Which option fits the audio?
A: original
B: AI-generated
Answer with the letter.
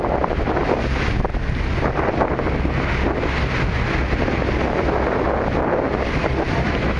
A